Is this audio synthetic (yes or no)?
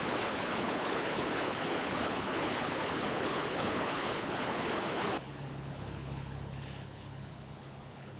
yes